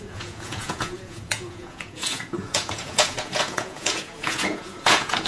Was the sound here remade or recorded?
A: remade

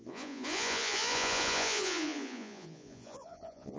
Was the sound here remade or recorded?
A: remade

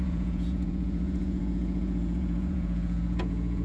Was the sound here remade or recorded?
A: remade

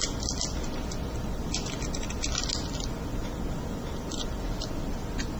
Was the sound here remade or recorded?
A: recorded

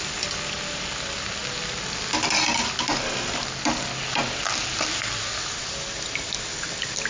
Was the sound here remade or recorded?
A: recorded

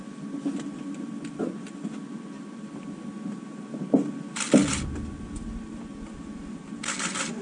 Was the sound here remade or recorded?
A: recorded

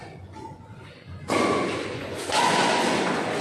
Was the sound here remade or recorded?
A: remade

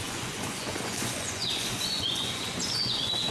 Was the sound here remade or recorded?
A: remade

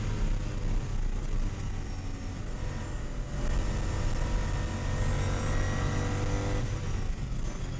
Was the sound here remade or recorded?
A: recorded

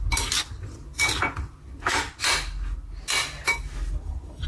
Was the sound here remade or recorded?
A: recorded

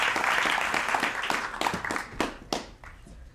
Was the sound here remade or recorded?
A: recorded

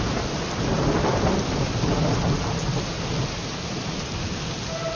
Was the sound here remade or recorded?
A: recorded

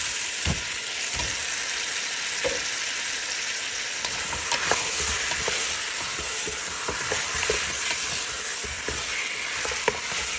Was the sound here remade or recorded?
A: recorded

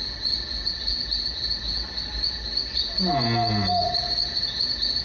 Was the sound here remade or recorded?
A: recorded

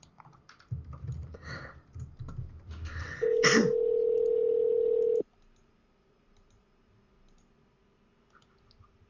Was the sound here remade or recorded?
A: recorded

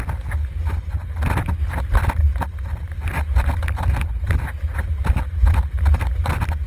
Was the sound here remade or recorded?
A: recorded